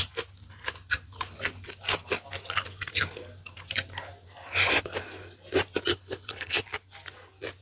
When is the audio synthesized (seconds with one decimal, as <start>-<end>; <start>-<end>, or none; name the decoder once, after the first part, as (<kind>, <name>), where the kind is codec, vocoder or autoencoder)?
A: 5.9-6.6 (codec, HILCodec)